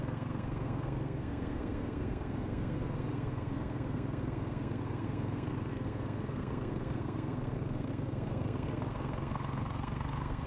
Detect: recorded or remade remade